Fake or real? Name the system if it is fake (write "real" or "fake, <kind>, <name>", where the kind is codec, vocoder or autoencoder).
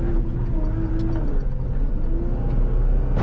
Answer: real